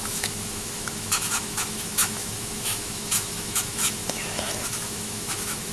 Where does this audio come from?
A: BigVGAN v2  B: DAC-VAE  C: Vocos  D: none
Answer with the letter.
B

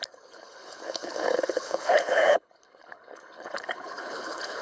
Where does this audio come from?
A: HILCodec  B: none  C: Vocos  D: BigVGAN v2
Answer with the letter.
A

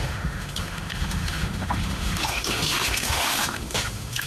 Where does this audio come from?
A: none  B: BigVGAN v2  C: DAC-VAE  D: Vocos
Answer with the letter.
C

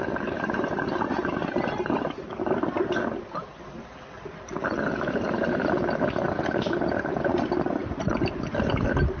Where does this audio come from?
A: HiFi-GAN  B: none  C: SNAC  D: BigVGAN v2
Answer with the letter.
B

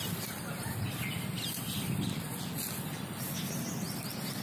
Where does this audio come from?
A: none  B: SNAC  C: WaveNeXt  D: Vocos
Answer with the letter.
A